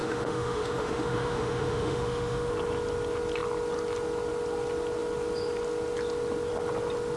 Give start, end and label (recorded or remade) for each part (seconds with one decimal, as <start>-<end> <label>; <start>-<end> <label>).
0.0-2.5 remade; 2.5-7.2 recorded